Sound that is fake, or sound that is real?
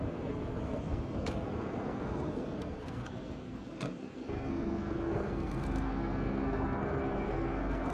fake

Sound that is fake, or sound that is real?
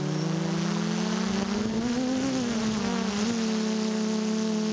real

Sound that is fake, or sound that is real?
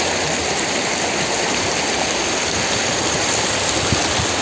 real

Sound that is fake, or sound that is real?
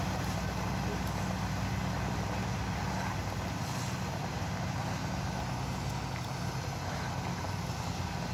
real